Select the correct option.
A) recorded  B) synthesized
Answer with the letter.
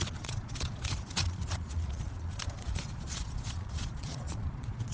B